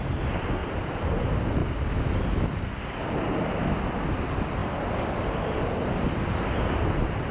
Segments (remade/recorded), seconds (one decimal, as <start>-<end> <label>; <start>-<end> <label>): 0.0-7.3 recorded